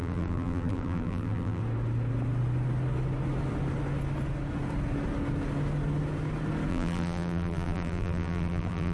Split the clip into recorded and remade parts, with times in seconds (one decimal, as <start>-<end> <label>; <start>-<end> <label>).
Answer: 0.0-1.6 remade; 1.6-6.7 recorded; 6.7-8.9 remade